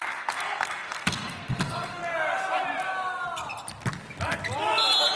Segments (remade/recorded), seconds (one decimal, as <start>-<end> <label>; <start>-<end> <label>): 0.0-2.0 remade; 2.0-5.2 recorded